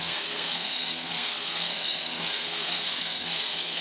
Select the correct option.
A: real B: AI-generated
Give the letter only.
B